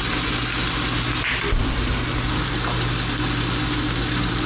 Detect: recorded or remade recorded